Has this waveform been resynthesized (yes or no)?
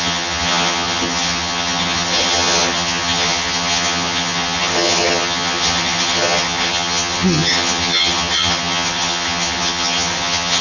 yes